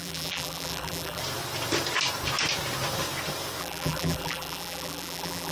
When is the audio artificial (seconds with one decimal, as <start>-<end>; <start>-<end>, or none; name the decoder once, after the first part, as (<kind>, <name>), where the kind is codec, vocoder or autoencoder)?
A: 0.0-1.2 (vocoder, BigVGAN v2); 3.6-5.5